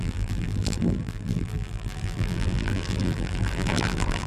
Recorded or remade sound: remade